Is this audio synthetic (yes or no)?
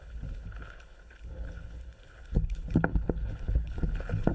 yes